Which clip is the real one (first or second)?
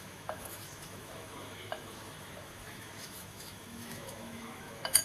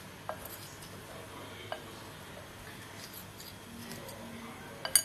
second